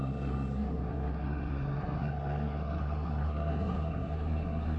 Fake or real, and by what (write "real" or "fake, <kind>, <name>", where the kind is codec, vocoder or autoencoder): fake, codec, SNAC